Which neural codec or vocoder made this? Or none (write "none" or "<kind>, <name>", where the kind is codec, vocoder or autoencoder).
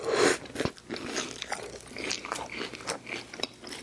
none